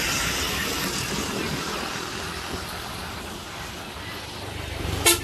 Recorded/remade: recorded